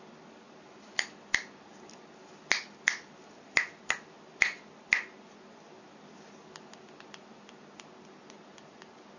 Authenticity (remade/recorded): recorded